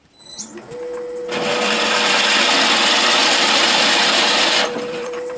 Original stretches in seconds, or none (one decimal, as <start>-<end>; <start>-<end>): 0.0-3.2